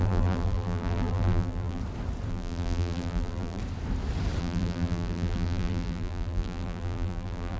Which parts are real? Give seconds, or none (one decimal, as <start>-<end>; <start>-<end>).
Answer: 1.8-2.3; 3.6-4.4